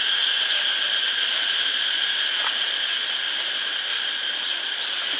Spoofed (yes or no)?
no